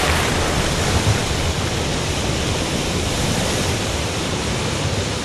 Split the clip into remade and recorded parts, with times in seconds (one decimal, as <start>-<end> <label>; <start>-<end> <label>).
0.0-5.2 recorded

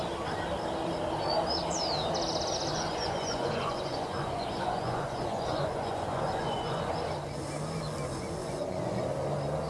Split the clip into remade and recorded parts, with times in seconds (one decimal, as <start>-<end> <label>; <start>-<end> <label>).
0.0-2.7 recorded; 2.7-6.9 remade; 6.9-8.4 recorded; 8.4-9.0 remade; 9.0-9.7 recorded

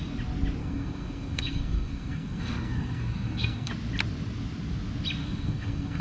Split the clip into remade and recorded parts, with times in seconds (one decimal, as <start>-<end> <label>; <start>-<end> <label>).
0.0-0.6 recorded; 0.6-3.7 remade; 3.7-5.2 recorded; 5.2-6.0 remade

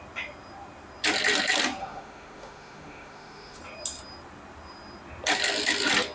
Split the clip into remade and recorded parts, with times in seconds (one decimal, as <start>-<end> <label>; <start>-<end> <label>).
0.0-1.8 recorded; 1.8-3.6 remade; 3.6-6.1 recorded

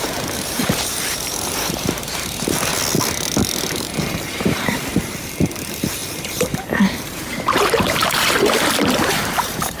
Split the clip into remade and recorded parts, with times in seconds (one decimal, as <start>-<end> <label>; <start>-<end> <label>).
0.0-2.7 remade; 2.7-3.7 recorded; 3.7-8.0 remade; 8.0-9.1 recorded; 9.1-9.8 remade

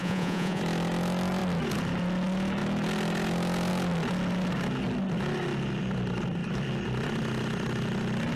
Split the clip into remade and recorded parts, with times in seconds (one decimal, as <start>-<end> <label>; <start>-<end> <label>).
0.0-0.6 remade; 0.6-8.4 recorded

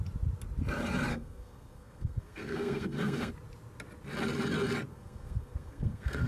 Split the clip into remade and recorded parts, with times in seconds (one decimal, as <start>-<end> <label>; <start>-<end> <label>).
0.0-1.1 recorded; 1.1-3.3 remade; 3.3-4.9 recorded; 4.9-6.3 remade